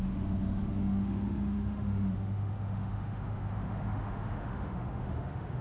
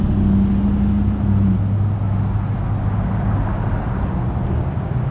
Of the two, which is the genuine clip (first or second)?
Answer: second